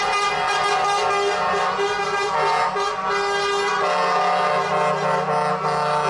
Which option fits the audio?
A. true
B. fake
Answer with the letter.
A